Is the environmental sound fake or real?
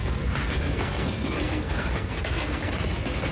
fake